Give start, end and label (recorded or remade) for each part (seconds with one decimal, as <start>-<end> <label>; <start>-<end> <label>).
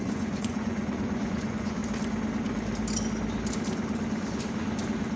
0.0-1.8 remade; 1.8-5.2 recorded